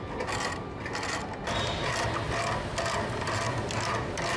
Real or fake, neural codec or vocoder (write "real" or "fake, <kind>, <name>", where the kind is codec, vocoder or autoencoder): real